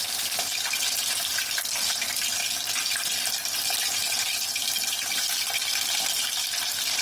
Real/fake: real